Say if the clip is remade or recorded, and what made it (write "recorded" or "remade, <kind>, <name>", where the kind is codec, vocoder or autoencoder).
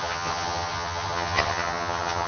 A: remade, vocoder, HiFi-GAN